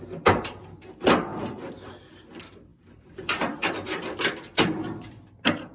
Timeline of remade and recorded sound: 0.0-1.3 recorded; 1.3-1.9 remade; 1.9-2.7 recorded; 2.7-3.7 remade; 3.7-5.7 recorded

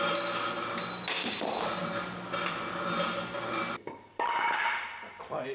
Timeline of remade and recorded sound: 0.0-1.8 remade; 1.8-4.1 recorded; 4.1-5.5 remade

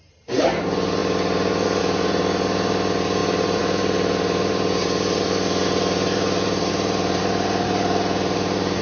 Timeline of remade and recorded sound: 0.0-8.8 remade

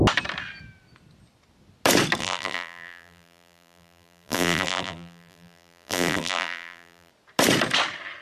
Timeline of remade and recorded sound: 0.0-2.2 recorded; 2.2-7.1 remade; 7.1-8.2 recorded

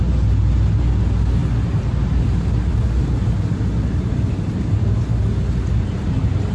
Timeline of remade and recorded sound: 0.0-3.9 recorded; 3.9-4.7 remade; 4.7-6.5 recorded

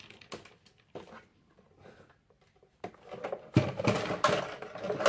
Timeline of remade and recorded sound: 0.0-5.1 recorded